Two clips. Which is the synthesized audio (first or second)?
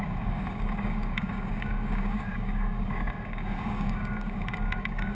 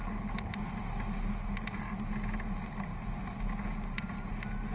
first